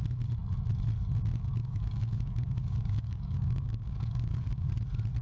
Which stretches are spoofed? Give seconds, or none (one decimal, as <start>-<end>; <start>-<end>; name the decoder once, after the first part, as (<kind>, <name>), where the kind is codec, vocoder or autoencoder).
1.6-4.7 (codec, DAC)